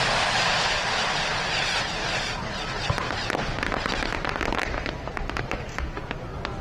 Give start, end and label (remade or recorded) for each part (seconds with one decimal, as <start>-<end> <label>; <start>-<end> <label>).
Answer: 0.0-6.6 recorded